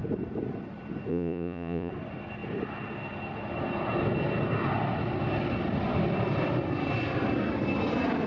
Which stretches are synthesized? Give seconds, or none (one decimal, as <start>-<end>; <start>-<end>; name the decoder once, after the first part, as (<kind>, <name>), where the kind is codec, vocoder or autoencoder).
1.1-1.9 (vocoder, Vocos)